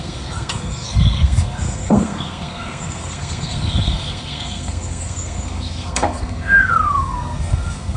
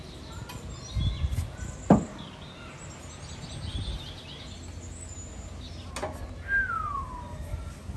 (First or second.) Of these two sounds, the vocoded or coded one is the first